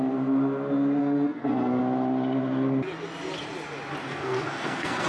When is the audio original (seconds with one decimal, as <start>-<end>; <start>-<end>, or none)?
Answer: 0.0-1.0; 1.8-4.0